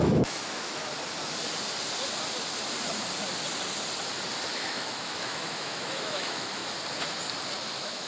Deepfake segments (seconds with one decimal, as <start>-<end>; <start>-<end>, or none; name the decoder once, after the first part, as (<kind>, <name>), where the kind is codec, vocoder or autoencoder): 0.0-0.8 (autoencoder, DAC-VAE); 4.5-6.6; 7.6-8.1